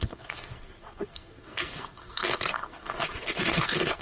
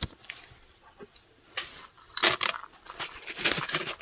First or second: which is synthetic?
first